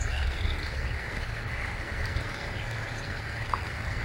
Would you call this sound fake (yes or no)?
yes